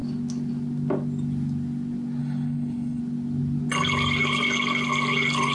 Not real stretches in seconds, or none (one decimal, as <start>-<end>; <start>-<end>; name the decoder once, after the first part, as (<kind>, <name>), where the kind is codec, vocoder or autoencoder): 2.2-3.0 (codec, HILCodec)